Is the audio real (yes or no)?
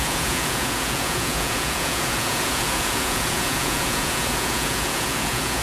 no